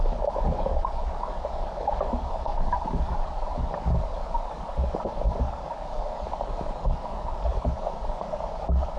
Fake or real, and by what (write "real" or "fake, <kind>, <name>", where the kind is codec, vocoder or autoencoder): fake, codec, DAC